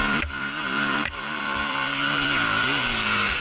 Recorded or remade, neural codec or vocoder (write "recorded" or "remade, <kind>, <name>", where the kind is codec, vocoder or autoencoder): remade, vocoder, BigVGAN v2